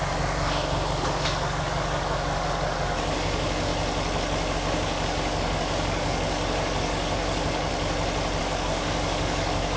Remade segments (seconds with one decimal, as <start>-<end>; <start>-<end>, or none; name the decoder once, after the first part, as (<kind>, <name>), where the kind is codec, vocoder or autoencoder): 0.0-3.7 (codec, DAC); 4.5-7.7; 8.4-9.8